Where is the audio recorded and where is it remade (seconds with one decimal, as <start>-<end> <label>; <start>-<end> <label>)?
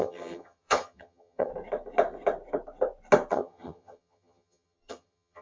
0.0-1.5 remade; 1.5-3.3 recorded; 3.3-5.4 remade